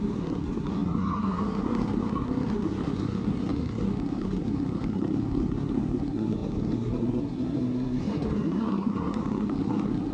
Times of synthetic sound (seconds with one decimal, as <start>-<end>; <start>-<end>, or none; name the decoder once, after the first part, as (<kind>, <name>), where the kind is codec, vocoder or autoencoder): 0.0-10.1 (codec, SNAC)